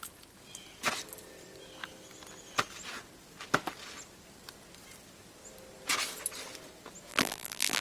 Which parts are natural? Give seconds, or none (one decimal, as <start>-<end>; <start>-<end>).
0.0-7.1